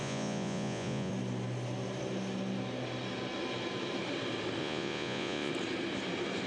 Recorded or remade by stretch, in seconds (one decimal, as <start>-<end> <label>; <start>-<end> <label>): 0.0-1.1 remade; 1.1-4.6 recorded; 4.6-5.5 remade; 5.5-6.5 recorded